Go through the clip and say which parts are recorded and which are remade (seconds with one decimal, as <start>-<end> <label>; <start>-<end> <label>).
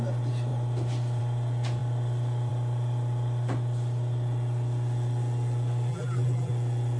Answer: 0.0-5.9 recorded; 5.9-6.5 remade; 6.5-7.0 recorded